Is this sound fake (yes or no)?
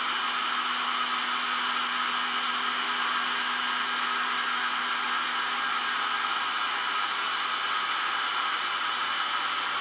no